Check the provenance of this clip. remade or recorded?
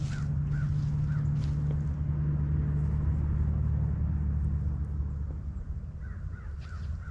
recorded